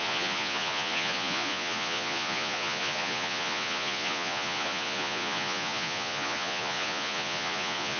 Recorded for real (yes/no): no